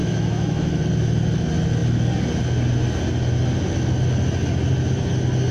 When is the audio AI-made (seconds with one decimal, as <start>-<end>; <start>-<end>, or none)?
0.0-0.8